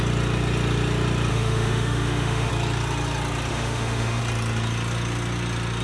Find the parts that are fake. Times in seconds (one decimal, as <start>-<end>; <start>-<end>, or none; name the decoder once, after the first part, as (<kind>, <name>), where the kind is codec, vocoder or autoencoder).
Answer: 1.3-2.5 (autoencoder, DAC-VAE); 3.5-4.2